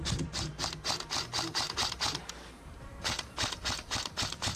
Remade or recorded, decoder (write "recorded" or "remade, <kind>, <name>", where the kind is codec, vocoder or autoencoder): remade, vocoder, BigVGAN v2